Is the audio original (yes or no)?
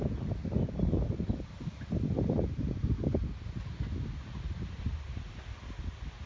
yes